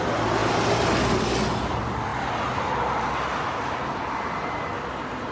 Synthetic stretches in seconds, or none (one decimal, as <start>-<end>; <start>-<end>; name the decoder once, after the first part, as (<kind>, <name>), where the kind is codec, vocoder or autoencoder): none